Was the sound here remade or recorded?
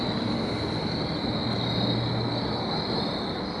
recorded